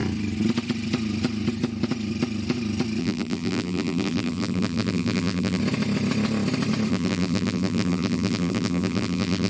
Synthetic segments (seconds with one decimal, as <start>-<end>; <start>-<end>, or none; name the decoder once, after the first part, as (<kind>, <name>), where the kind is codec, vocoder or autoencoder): 3.0-5.6 (vocoder, BigVGAN v2); 6.9-9.5